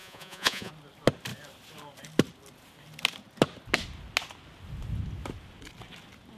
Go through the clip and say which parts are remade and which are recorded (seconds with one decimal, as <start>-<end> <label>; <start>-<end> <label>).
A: 0.0-0.7 remade; 0.7-6.4 recorded